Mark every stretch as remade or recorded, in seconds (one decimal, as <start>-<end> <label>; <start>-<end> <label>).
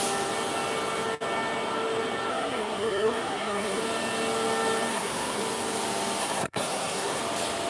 0.0-2.3 recorded; 2.3-3.8 remade; 3.8-4.9 recorded; 4.9-5.4 remade; 5.4-6.2 recorded; 6.2-7.2 remade; 7.2-7.7 recorded